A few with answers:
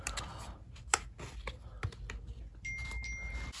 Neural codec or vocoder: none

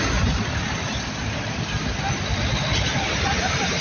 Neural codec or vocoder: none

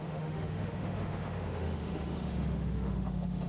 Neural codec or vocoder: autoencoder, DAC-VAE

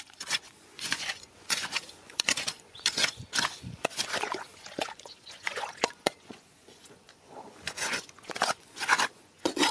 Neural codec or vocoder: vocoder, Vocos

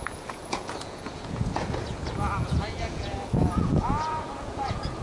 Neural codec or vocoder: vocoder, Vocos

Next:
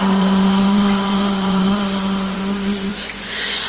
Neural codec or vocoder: vocoder, Vocos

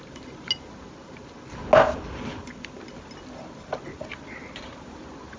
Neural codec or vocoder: none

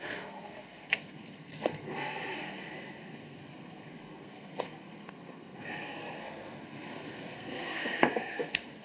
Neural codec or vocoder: codec, SNAC